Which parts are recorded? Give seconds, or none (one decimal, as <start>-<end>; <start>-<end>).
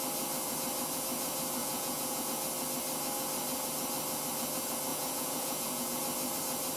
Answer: 0.0-1.6; 2.3-4.9; 6.0-6.8